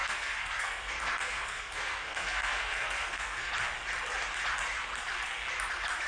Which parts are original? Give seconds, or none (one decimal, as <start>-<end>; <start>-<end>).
3.5-6.1